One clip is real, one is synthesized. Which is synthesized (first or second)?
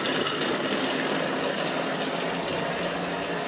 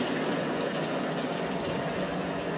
second